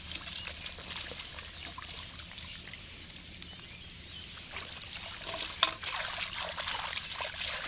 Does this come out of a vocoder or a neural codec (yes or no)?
no